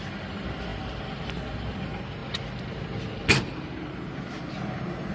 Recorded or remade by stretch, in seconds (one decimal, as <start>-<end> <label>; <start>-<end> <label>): 0.0-5.1 recorded